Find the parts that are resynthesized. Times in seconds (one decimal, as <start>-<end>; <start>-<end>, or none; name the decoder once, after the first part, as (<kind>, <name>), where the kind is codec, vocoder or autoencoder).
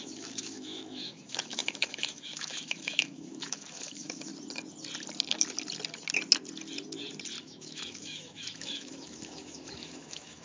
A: 0.0-4.3 (autoencoder, DAC-VAE); 7.4-10.4